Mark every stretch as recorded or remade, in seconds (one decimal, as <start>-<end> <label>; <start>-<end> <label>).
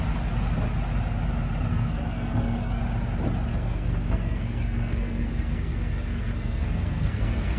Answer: 0.0-1.7 recorded; 1.7-2.8 remade; 2.8-3.5 recorded; 3.5-7.6 remade